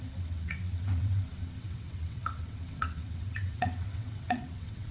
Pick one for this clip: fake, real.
fake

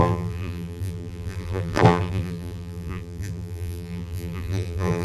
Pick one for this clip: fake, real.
fake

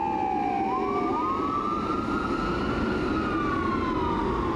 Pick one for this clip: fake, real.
real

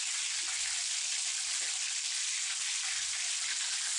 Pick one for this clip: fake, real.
real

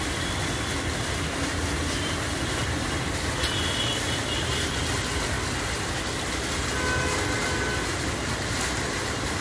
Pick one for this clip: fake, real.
real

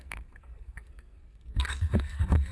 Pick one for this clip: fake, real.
fake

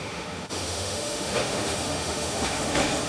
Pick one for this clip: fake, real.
fake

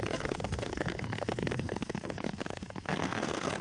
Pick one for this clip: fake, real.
fake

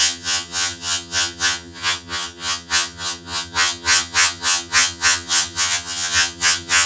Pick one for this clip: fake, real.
fake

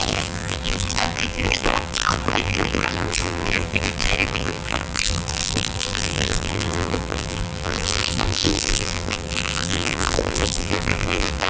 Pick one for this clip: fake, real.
fake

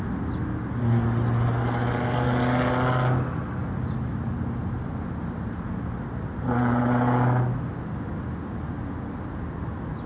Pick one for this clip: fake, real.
real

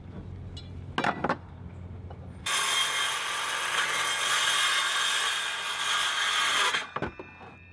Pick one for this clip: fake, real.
real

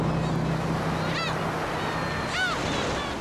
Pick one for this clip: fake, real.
real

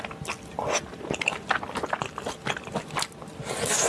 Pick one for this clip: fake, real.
real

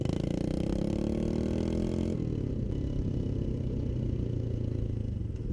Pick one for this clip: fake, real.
real